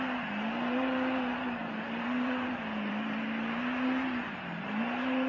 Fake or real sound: fake